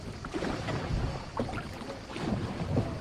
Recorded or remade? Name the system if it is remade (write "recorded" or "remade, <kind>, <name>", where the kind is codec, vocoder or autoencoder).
recorded